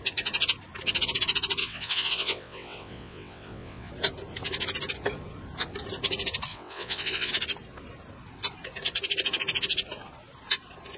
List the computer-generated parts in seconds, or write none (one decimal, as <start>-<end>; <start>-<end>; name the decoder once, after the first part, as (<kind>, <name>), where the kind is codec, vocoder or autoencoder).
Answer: 1.6-3.9 (vocoder, WaveNeXt); 6.5-7.3